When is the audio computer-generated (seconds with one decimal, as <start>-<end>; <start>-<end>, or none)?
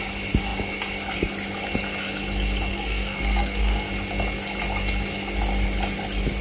2.7-3.9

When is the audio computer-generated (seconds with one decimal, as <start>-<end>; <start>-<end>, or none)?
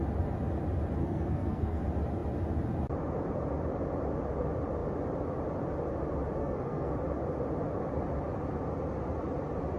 1.0-1.8; 6.4-6.9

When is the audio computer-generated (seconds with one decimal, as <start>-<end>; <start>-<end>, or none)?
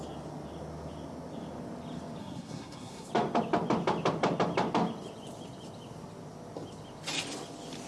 2.2-3.1